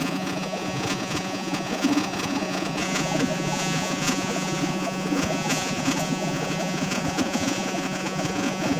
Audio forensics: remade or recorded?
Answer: remade